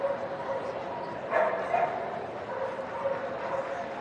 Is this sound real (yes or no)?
yes